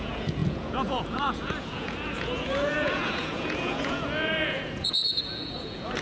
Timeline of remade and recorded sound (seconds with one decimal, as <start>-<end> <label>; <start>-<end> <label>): 0.0-6.0 remade